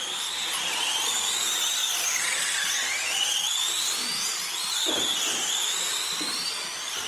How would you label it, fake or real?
real